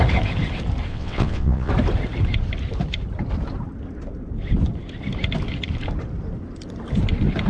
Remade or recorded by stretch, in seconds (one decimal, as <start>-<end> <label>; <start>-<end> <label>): 0.0-0.9 recorded; 0.9-1.7 remade; 1.7-7.5 recorded